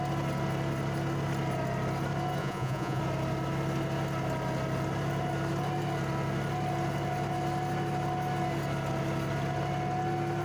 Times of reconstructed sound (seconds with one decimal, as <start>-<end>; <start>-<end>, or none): 2.4-3.0